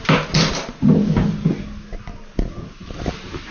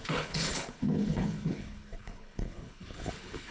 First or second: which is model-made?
second